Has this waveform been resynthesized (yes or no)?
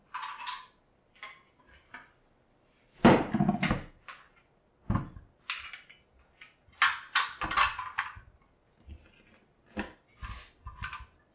no